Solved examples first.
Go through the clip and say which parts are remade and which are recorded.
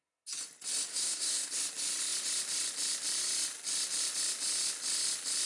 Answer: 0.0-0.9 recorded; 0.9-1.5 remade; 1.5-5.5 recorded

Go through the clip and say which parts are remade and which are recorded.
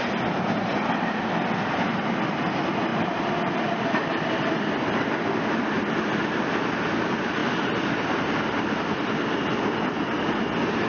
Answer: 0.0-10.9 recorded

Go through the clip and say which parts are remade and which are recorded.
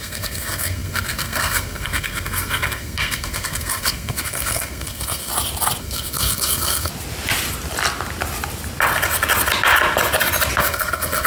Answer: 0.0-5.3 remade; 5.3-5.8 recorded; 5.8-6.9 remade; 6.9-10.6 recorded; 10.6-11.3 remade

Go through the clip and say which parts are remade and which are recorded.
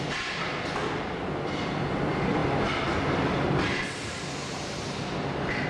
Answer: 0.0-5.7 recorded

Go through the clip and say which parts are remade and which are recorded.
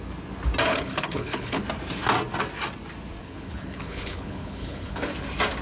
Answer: 0.0-0.7 recorded; 0.7-1.6 remade; 1.6-3.2 recorded; 3.2-5.1 remade; 5.1-5.6 recorded